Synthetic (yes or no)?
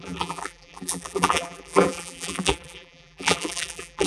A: yes